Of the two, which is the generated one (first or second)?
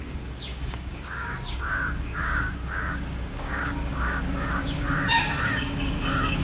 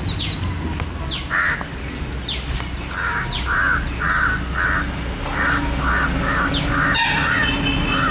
first